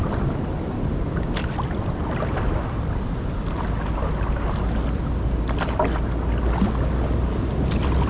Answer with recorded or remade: recorded